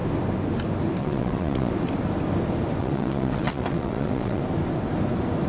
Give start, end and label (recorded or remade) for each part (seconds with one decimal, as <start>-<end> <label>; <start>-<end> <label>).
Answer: 0.0-1.0 recorded; 1.0-1.7 remade; 1.7-2.8 recorded; 2.8-4.4 remade; 4.4-5.5 recorded